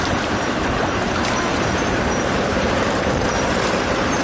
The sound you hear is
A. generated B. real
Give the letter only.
A